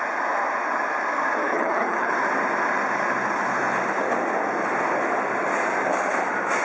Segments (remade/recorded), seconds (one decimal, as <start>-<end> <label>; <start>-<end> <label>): 0.0-1.4 recorded; 1.4-2.1 remade; 2.1-6.6 recorded